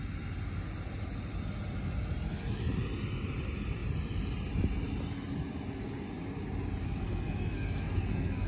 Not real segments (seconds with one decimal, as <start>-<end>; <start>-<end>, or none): 7.0-8.5